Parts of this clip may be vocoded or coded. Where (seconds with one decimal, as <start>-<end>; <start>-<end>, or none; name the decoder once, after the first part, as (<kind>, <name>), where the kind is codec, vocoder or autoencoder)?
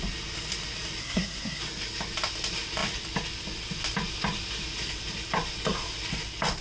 1.0-1.6 (codec, SNAC)